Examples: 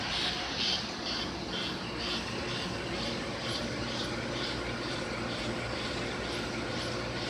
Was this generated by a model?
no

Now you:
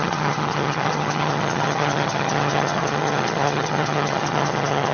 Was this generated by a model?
yes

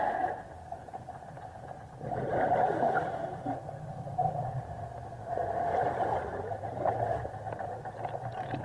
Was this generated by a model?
no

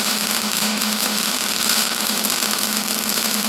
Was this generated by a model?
yes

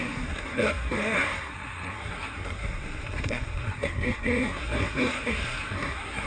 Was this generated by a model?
yes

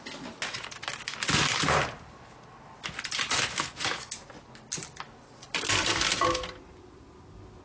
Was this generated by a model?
no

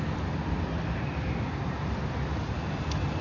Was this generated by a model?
no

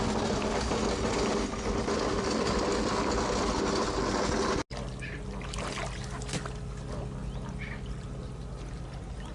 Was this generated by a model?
no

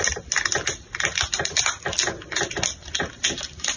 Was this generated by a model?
no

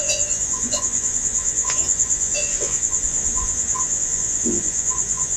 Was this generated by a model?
yes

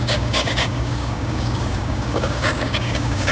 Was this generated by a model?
yes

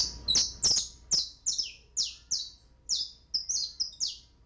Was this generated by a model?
no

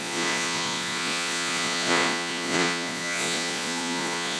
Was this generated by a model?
yes